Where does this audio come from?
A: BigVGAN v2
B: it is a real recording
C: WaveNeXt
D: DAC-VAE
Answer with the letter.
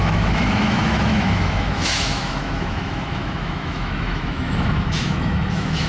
D